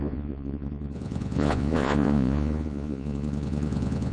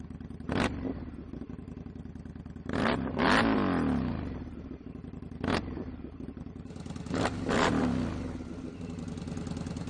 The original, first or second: second